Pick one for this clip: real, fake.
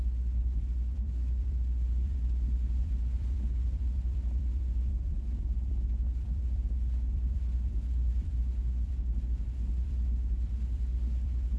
fake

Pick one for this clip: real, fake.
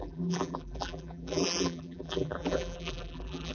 fake